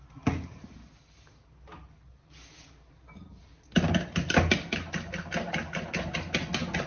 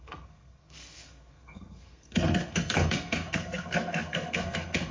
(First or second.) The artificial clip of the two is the second